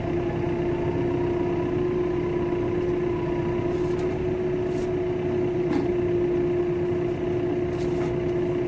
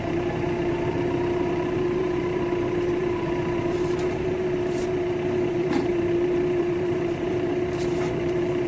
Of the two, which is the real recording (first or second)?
first